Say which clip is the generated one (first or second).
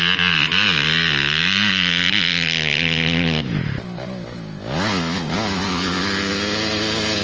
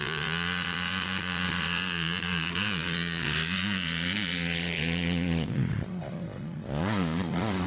second